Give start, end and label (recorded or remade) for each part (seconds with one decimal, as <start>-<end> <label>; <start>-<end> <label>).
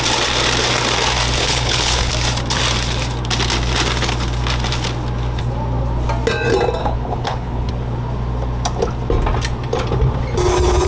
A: 0.0-1.4 recorded; 1.4-2.1 remade; 2.1-6.8 recorded; 6.8-7.7 remade; 7.7-10.9 recorded